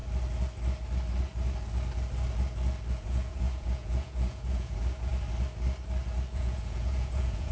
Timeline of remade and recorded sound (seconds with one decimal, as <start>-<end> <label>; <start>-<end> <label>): 0.0-2.9 recorded; 2.9-5.1 remade; 5.1-6.3 recorded; 6.3-7.5 remade